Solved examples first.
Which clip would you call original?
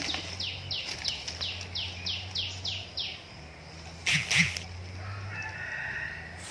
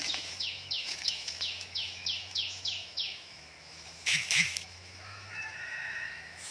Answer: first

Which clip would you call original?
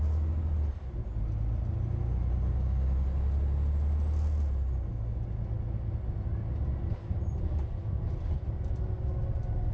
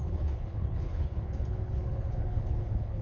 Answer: first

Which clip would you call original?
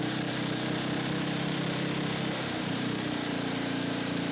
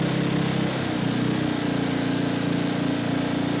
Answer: second